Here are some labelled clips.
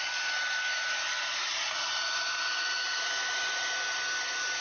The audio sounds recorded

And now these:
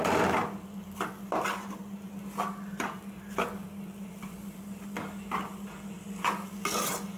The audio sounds recorded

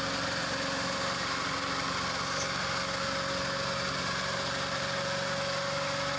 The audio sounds recorded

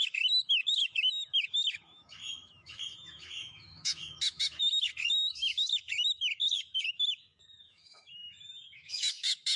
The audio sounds remade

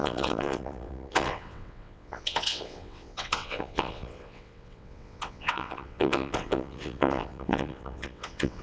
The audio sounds remade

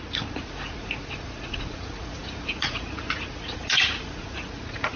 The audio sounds remade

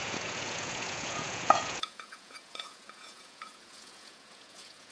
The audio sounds remade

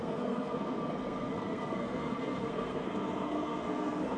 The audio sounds remade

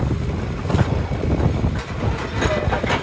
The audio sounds remade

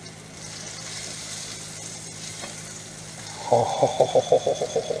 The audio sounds recorded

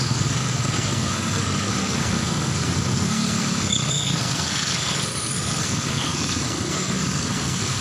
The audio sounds remade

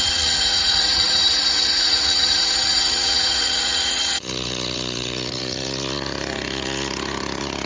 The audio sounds remade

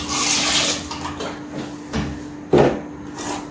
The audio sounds recorded